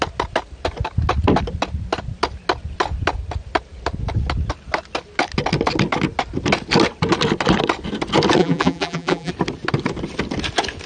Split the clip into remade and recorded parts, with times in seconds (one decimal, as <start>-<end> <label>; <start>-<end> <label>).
0.0-8.4 recorded; 8.4-9.3 remade; 9.3-10.9 recorded